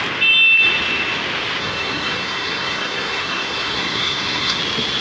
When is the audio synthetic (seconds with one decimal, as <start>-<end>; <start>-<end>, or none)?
1.6-4.6